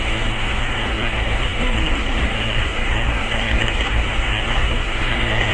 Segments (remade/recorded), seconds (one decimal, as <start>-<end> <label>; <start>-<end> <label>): 0.0-5.5 remade